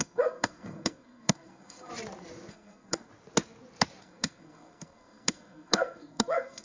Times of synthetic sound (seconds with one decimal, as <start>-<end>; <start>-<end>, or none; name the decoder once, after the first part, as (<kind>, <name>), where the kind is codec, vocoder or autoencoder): 0.0-1.9 (codec, SNAC); 2.5-3.1; 4.0-6.6